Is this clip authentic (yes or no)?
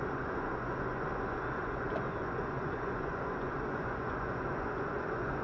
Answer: no